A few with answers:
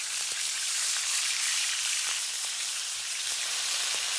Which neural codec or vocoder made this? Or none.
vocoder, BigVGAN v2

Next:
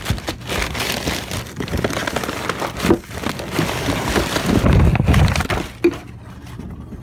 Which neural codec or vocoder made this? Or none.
none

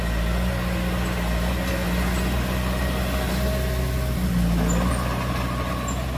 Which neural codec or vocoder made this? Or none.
none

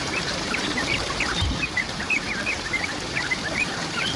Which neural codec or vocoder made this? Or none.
vocoder, BigVGAN v2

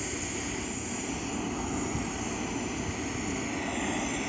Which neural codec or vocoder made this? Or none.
none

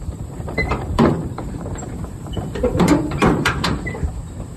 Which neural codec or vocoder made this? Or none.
vocoder, BigVGAN v2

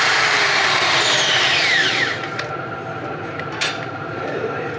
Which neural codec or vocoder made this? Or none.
vocoder, BigVGAN v2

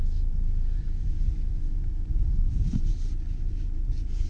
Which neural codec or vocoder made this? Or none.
vocoder, BigVGAN v2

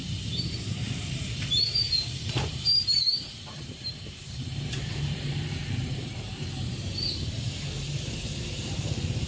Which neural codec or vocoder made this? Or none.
vocoder, BigVGAN v2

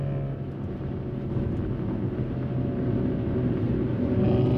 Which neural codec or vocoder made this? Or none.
none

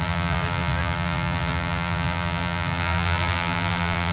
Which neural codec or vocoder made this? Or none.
vocoder, BigVGAN v2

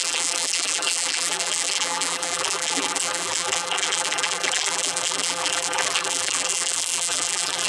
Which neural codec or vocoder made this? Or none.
vocoder, BigVGAN v2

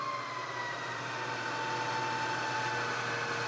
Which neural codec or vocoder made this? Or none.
none